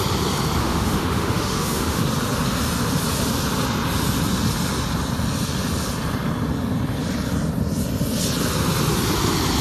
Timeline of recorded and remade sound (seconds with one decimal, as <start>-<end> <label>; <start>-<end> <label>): 0.0-0.6 recorded; 0.6-2.0 remade; 2.0-9.6 recorded

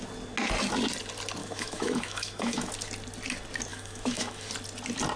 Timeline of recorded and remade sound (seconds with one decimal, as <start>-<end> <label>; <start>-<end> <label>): 0.0-1.4 recorded; 1.4-2.7 remade; 2.7-3.7 recorded; 3.7-4.5 remade; 4.5-5.2 recorded

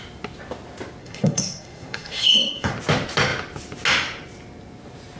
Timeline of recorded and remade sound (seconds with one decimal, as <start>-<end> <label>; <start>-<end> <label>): 0.0-1.0 recorded; 1.0-2.7 remade; 2.7-5.2 recorded

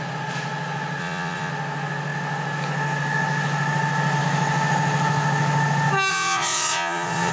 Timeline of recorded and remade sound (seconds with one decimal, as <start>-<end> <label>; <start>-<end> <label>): 0.0-1.0 recorded; 1.0-1.5 remade; 1.5-6.1 recorded; 6.1-7.3 remade